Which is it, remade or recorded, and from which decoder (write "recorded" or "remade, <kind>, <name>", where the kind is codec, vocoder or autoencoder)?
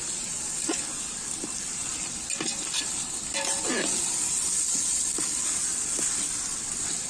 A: recorded